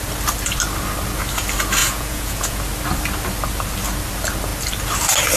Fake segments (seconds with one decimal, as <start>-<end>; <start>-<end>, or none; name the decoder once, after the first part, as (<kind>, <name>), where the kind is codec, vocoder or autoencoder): 1.8-2.6 (vocoder, Vocos)